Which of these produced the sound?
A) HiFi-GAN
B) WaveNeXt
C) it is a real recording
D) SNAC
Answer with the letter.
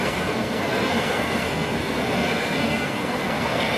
D